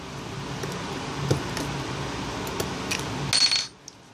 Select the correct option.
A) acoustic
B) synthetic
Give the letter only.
A